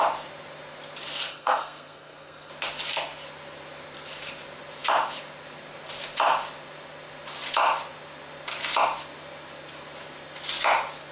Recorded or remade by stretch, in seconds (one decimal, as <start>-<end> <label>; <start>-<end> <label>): 0.0-1.3 recorded; 1.3-2.5 remade; 2.5-11.1 recorded